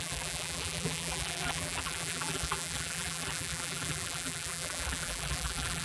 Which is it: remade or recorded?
remade